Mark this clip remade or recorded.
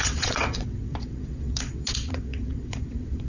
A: remade